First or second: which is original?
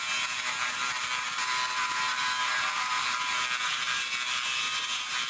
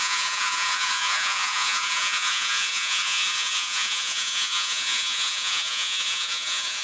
first